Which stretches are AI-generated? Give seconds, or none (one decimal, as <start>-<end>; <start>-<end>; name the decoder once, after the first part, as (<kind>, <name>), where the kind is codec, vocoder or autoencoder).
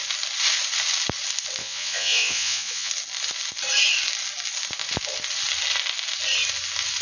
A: 1.6-2.9 (vocoder, Vocos)